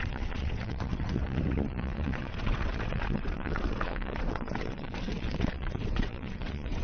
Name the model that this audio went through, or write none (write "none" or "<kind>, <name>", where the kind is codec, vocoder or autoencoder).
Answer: vocoder, WaveNeXt